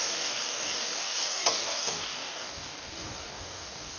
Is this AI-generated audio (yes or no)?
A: yes